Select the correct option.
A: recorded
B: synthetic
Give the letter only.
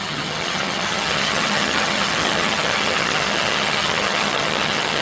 B